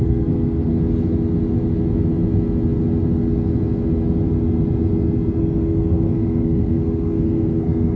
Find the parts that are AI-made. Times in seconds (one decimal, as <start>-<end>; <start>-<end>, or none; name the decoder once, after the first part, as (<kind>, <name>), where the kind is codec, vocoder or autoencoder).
0.0-0.7 (codec, SNAC); 5.4-8.0